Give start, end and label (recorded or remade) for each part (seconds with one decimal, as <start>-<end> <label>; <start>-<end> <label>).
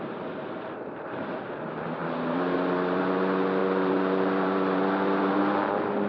0.0-2.0 recorded; 2.0-3.0 remade; 3.0-3.6 recorded; 3.6-5.3 remade; 5.3-6.1 recorded